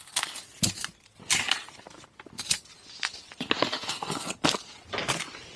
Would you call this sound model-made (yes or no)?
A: no